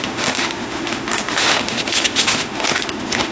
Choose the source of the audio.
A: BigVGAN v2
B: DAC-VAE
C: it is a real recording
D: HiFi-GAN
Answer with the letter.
B